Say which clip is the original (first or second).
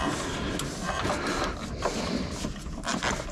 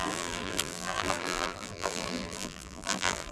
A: first